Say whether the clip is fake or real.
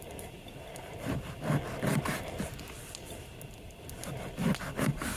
real